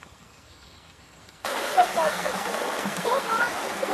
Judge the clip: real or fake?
fake